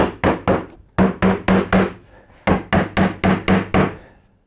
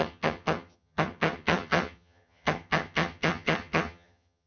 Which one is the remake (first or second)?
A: second